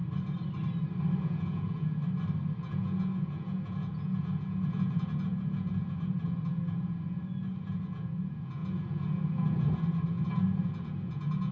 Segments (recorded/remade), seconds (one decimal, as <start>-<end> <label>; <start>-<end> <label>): 0.0-1.2 recorded; 1.2-2.0 remade; 2.0-2.6 recorded; 2.6-11.5 remade